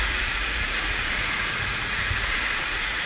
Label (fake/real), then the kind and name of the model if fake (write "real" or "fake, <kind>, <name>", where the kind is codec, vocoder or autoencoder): fake, vocoder, Vocos